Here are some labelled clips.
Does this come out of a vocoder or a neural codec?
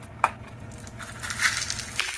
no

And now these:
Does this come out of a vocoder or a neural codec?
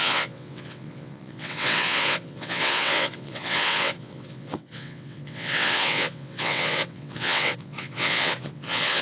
yes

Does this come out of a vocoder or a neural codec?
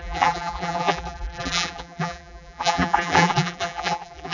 yes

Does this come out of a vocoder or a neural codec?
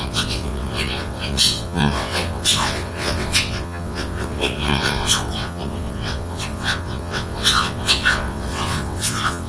yes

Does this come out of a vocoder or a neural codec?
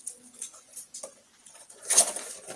yes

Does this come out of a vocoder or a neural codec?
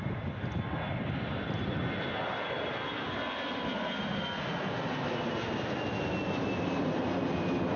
no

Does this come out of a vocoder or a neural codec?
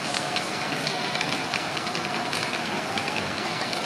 yes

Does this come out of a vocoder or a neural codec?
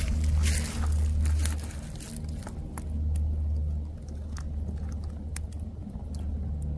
no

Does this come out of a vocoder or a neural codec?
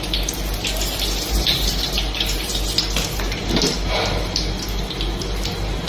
yes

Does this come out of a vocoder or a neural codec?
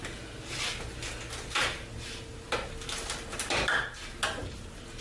no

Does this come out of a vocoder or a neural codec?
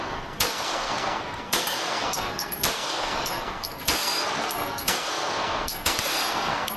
yes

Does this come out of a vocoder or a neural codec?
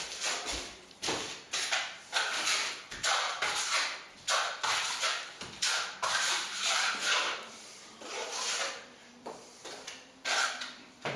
yes